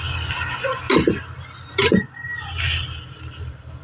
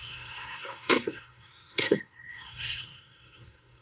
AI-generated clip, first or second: second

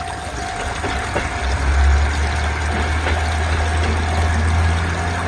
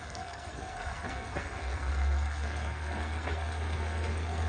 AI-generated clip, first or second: second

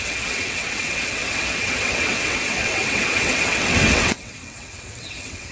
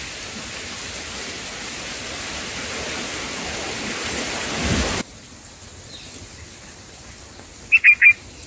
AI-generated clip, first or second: first